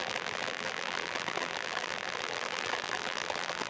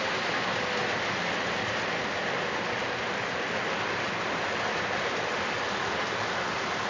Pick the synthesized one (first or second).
first